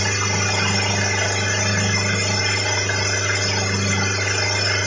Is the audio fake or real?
real